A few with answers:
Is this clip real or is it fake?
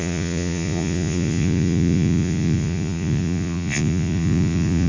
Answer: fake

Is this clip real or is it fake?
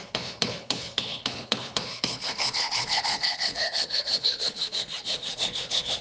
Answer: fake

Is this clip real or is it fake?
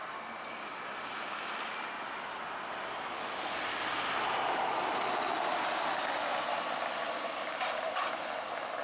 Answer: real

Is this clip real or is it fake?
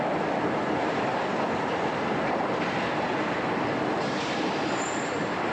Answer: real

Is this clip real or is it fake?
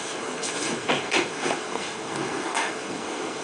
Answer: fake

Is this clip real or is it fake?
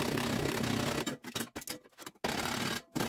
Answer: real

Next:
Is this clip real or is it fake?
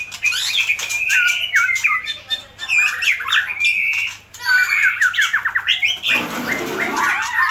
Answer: real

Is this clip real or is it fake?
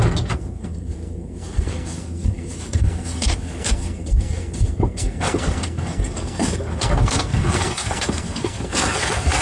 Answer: fake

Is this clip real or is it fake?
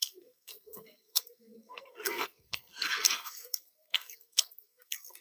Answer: fake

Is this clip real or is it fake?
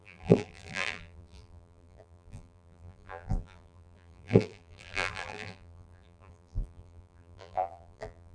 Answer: fake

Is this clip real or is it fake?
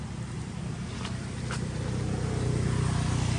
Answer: real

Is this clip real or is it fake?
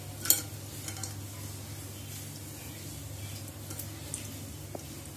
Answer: real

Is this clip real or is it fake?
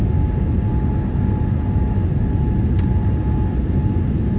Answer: real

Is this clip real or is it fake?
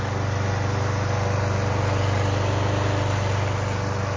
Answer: real